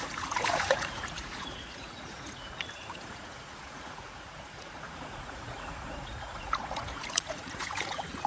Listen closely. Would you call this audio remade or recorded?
remade